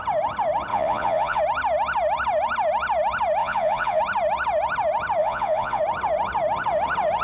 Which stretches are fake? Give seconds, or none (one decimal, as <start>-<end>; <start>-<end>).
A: 0.7-1.4; 3.4-4.0; 5.2-5.8